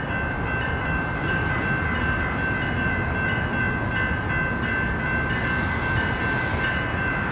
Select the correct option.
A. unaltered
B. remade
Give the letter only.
A